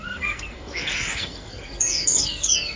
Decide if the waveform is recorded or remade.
remade